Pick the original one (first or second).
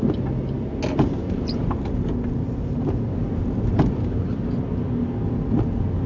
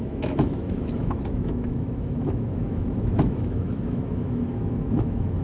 first